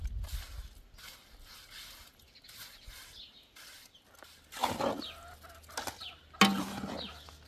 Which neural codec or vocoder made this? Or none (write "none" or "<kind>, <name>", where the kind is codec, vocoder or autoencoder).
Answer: none